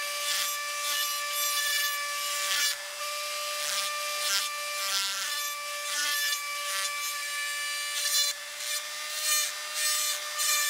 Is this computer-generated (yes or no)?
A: no